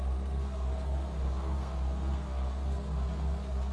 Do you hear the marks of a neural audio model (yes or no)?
yes